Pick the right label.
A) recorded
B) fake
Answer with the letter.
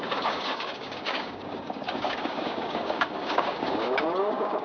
B